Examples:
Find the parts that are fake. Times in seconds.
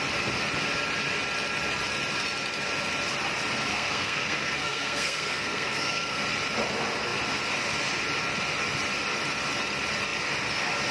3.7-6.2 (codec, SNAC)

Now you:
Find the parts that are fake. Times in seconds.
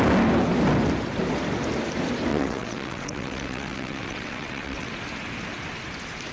2.3-4.9 (vocoder, WaveNeXt)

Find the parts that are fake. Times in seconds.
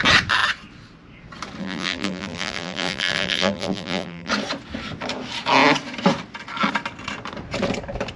1.6-4.3 (vocoder, BigVGAN v2)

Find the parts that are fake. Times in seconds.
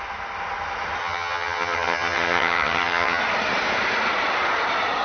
1.0-3.2 (vocoder, HiFi-GAN)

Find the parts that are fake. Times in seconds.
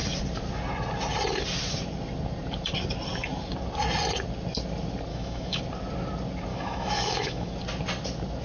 5.1-5.6 (autoencoder, DAC-VAE); 6.5-7.5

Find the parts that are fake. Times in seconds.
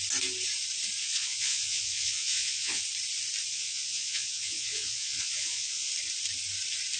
1.0-2.8 (vocoder, Vocos); 3.5-5.9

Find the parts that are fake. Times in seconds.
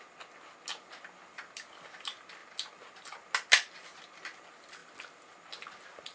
none